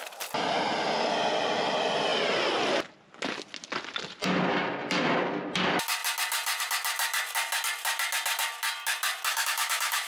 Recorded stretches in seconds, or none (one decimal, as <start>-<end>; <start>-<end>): 0.0-9.3